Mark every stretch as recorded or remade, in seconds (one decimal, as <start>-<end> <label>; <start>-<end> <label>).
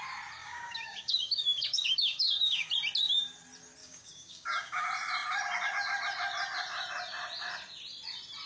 0.0-0.4 recorded; 0.4-2.7 remade; 2.7-3.8 recorded; 3.8-4.8 remade; 4.8-8.5 recorded